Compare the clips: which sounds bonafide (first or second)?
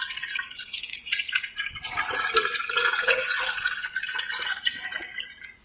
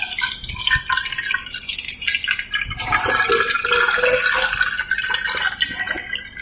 second